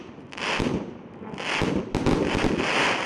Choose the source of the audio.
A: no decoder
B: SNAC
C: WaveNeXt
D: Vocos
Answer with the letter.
A